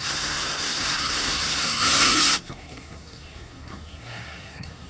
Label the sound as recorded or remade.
remade